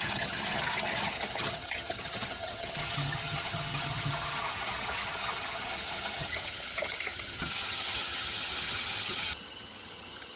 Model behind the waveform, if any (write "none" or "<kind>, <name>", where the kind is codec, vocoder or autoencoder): vocoder, HiFi-GAN